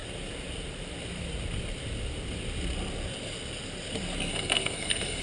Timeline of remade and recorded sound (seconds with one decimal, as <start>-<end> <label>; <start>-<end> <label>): 0.0-4.3 recorded; 4.3-5.2 remade